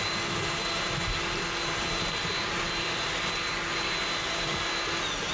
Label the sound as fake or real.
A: real